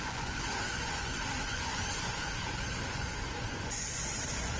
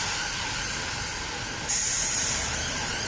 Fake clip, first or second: first